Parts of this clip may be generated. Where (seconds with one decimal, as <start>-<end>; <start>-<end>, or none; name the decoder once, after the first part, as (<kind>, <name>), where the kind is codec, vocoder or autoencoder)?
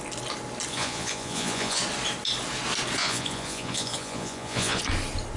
0.7-1.8 (vocoder, Vocos); 3.0-4.8